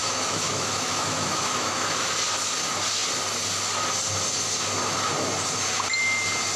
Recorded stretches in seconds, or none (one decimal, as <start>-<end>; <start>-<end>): 2.1-6.6